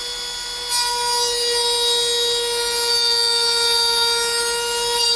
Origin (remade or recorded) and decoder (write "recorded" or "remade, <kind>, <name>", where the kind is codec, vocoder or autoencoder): recorded